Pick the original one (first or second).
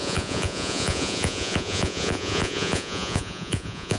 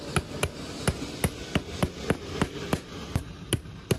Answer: second